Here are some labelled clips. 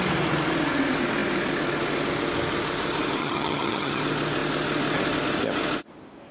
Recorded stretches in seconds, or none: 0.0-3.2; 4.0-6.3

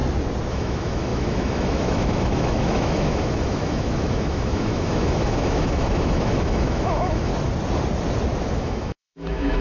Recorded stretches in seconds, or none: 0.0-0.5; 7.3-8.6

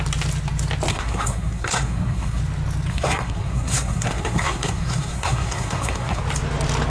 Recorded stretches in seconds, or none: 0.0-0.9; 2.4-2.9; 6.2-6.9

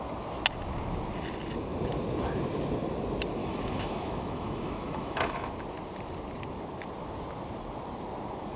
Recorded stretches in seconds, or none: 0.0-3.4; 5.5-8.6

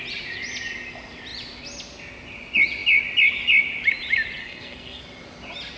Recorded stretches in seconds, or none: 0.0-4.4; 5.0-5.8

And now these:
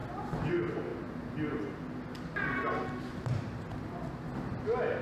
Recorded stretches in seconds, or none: 0.0-5.0

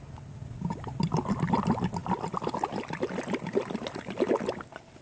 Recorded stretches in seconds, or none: 0.0-5.0